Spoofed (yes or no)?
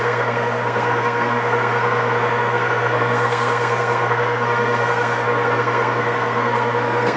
yes